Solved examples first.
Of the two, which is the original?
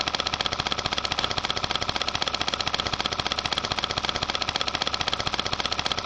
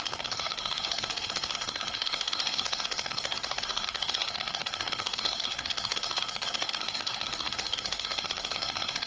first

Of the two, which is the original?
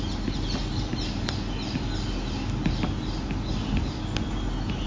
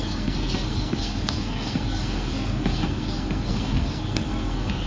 first